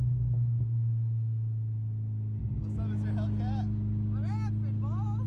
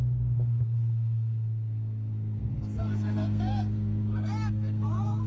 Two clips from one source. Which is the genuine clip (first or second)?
first